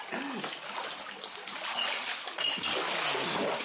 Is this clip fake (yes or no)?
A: no